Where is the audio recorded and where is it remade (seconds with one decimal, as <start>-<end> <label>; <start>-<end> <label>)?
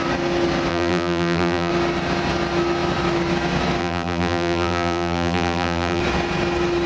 0.0-0.7 recorded; 0.7-1.7 remade; 1.7-3.8 recorded; 3.8-6.0 remade; 6.0-6.9 recorded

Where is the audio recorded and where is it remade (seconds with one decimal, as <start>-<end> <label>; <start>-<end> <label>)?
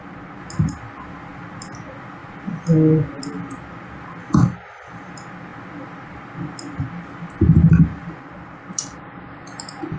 0.0-4.2 recorded; 4.2-5.1 remade; 5.1-10.0 recorded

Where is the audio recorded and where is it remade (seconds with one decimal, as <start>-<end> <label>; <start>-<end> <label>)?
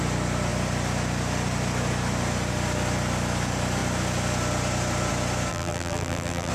0.0-5.5 recorded; 5.5-6.5 remade